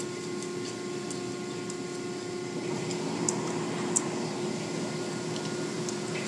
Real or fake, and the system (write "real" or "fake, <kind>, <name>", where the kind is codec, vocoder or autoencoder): real